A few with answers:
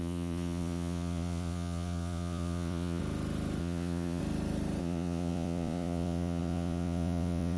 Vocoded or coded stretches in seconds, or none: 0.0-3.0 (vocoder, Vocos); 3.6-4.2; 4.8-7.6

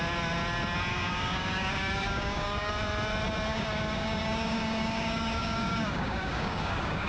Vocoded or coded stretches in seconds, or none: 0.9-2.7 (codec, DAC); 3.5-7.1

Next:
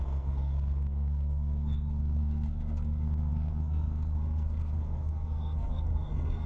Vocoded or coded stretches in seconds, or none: 0.0-6.5 (codec, SNAC)

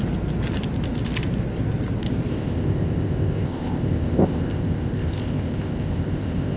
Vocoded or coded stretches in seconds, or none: 2.3-6.6 (codec, ZipCodec)